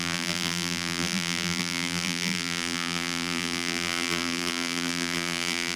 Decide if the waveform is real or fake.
fake